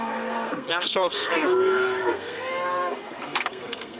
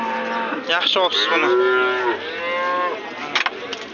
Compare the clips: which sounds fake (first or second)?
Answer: first